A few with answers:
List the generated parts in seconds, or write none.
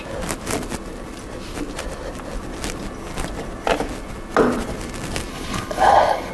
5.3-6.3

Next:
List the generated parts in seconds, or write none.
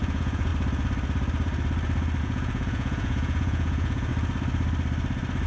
0.0-0.5; 2.2-4.1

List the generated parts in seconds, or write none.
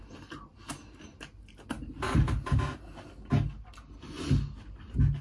none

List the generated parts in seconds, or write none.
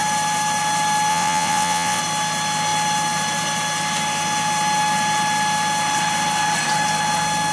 1.1-2.0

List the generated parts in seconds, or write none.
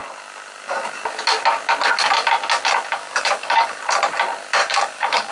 2.9-3.8; 4.6-5.3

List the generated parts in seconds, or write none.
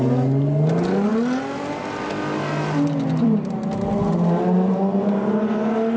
none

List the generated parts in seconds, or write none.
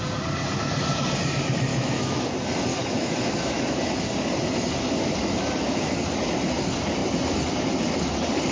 1.7-2.3; 2.7-3.8